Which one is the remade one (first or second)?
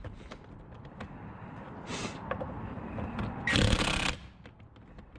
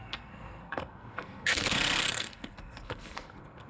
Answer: second